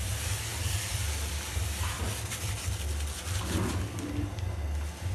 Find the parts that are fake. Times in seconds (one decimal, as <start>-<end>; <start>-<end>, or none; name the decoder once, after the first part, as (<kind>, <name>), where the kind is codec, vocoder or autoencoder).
0.5-2.7 (vocoder, BigVGAN v2)

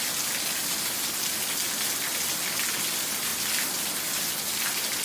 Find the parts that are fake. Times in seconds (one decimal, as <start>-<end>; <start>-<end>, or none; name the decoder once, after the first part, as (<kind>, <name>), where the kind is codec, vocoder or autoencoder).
none

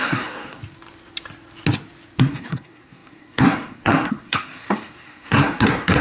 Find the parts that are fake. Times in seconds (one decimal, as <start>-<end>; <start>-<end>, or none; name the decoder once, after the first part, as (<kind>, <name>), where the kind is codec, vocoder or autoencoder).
0.0-0.6 (codec, SNAC); 2.2-6.0

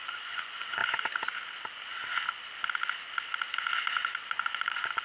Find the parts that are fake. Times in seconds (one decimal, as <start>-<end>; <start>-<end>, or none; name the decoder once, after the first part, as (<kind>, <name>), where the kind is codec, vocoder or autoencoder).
0.0-0.8 (vocoder, Vocos); 3.8-5.0